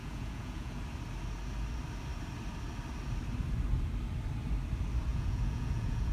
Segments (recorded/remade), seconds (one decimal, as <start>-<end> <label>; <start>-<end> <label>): 0.0-0.8 remade; 0.8-5.1 recorded; 5.1-6.1 remade

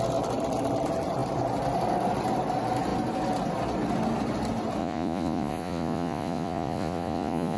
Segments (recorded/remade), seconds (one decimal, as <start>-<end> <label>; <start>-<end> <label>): 0.0-4.8 recorded; 4.8-7.6 remade

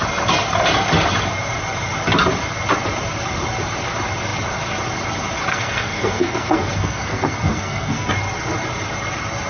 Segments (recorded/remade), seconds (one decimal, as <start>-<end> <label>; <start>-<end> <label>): 0.0-5.5 recorded; 5.5-8.1 remade; 8.1-9.5 recorded

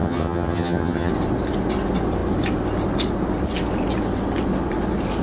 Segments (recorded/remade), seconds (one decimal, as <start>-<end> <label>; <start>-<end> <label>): 0.0-1.1 remade; 1.1-5.2 recorded

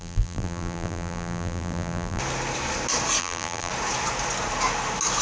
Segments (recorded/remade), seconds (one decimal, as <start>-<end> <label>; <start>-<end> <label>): 0.0-2.2 remade; 2.2-3.2 recorded; 3.2-3.7 remade; 3.7-5.2 recorded

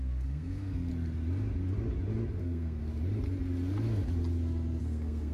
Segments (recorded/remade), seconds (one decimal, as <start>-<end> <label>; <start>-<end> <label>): 0.0-0.9 remade; 0.9-2.4 recorded; 2.4-2.8 remade; 2.8-4.8 recorded; 4.8-5.3 remade

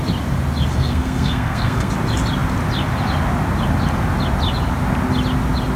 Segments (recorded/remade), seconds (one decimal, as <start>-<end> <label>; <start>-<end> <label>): 0.0-0.7 recorded; 0.7-1.9 remade; 1.9-5.8 recorded